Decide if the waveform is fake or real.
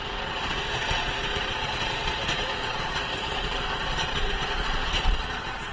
fake